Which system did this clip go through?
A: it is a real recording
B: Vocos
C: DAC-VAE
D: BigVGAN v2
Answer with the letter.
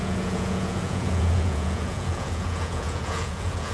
B